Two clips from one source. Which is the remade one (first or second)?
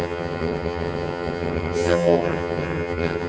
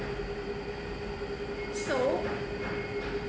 first